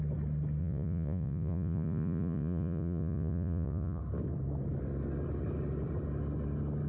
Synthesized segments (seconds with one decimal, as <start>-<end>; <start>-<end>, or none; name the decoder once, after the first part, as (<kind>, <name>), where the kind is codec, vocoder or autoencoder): 0.6-4.0 (vocoder, Vocos)